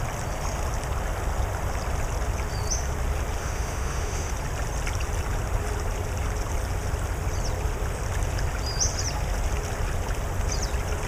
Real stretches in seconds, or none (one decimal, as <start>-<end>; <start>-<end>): 0.0-3.4; 4.3-11.1